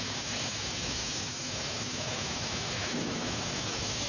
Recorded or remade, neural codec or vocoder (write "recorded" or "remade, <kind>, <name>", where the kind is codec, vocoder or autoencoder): remade, autoencoder, DAC-VAE